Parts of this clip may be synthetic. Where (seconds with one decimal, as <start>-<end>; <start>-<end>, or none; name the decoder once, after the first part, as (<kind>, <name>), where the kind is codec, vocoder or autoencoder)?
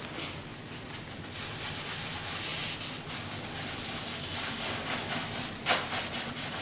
none